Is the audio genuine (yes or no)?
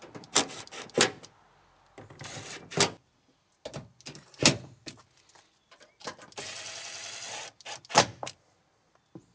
yes